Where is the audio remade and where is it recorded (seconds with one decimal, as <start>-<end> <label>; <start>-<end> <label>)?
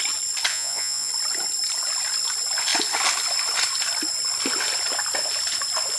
0.0-0.5 recorded; 0.5-1.1 remade; 1.1-6.0 recorded